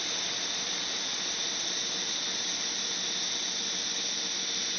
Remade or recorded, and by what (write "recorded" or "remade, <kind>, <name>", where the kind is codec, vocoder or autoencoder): recorded